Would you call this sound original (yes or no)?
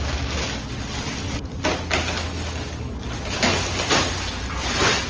yes